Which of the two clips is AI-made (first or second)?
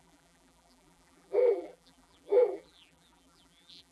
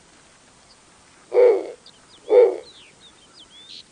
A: first